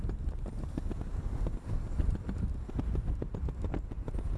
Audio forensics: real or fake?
real